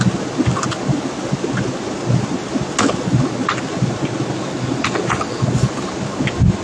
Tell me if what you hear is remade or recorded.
recorded